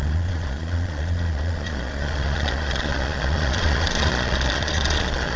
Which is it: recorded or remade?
remade